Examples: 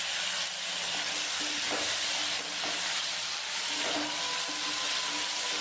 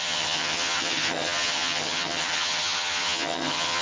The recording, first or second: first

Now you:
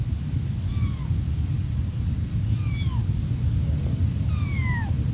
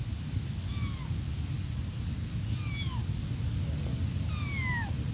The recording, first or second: second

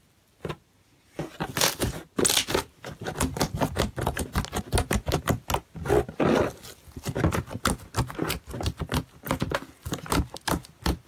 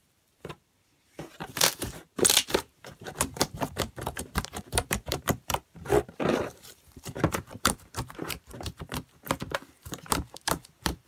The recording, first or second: first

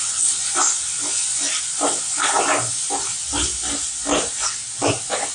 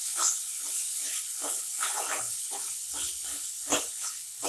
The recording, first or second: first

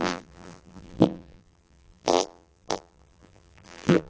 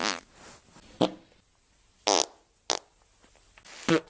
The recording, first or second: second